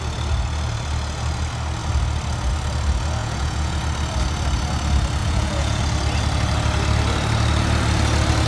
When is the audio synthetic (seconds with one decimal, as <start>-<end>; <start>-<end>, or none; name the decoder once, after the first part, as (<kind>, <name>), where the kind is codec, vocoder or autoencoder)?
3.2-3.8 (vocoder, Vocos); 5.2-5.8